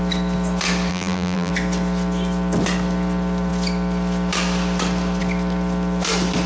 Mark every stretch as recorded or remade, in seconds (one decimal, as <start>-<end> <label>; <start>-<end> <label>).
0.0-0.9 recorded; 0.9-1.5 remade; 1.5-6.5 recorded